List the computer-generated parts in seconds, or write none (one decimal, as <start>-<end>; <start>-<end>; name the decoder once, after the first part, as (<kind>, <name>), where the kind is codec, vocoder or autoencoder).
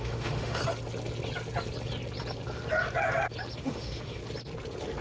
0.0-0.6 (autoencoder, DAC-VAE); 3.6-4.2